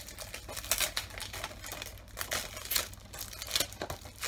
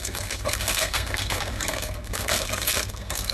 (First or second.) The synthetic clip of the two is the second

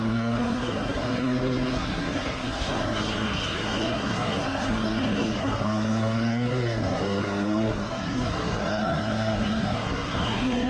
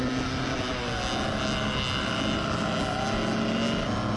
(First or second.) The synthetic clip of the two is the first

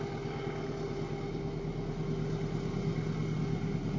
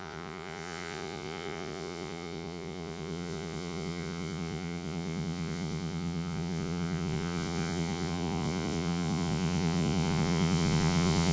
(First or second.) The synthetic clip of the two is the second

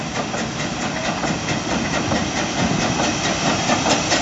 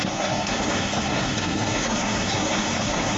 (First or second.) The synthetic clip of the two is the second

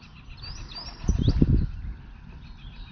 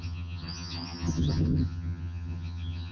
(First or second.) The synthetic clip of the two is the second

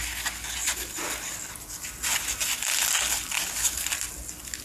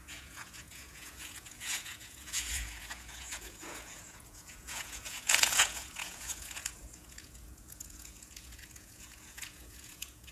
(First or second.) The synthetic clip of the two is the second